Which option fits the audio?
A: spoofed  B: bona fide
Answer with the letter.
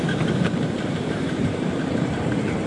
A